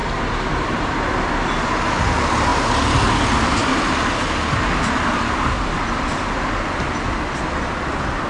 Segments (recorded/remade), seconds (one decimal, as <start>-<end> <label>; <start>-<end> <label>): 0.0-0.9 remade; 0.9-8.3 recorded